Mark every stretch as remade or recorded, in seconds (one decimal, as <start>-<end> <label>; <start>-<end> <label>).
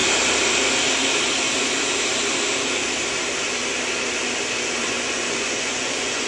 0.0-4.8 recorded; 4.8-6.3 remade